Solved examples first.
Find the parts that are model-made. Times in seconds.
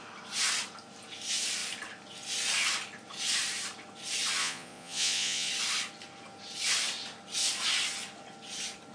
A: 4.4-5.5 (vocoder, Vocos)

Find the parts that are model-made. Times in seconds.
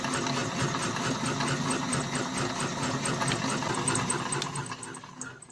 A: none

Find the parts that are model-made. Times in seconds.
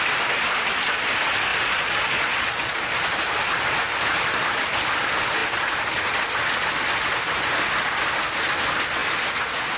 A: 1.5-2.9 (vocoder, Vocos)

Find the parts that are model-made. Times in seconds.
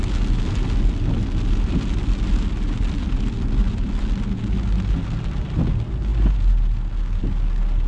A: none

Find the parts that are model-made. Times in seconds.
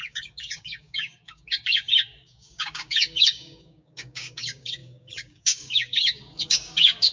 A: 0.0-7.1 (codec, DAC)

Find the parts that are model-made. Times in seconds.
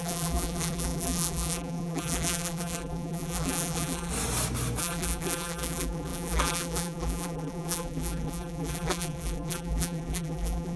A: 0.0-4.1 (vocoder, BigVGAN v2); 4.8-10.8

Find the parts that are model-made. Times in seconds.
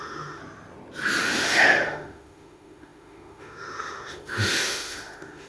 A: 0.0-0.4 (autoencoder, DAC-VAE); 1.2-5.5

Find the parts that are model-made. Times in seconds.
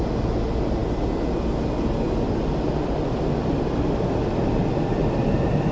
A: none